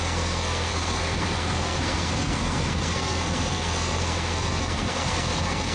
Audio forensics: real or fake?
fake